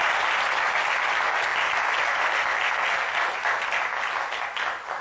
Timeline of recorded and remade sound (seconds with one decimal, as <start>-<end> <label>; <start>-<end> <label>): 0.0-5.0 recorded